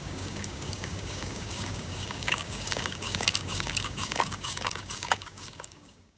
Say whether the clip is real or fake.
fake